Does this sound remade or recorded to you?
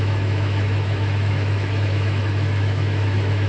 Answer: remade